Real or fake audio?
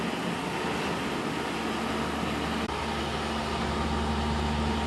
real